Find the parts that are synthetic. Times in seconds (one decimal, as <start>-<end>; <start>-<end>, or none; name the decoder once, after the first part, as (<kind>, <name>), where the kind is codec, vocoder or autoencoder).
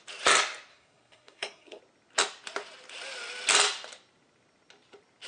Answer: 0.7-1.8 (codec, SNAC)